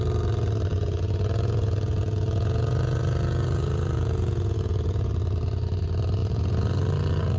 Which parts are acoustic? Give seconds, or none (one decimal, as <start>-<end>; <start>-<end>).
0.0-0.7; 5.1-6.2; 6.8-7.4